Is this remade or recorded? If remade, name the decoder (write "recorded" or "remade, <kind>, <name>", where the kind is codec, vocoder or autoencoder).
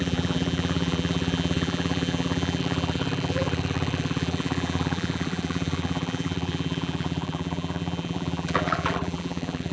remade, vocoder, BigVGAN v2